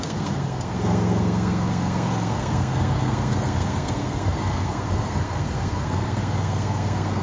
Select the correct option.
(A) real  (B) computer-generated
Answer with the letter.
B